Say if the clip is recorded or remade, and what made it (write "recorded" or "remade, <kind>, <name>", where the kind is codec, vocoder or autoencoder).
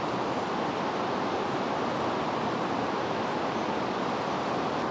recorded